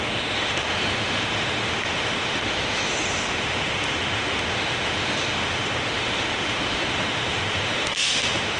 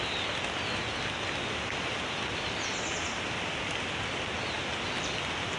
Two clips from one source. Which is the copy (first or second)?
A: first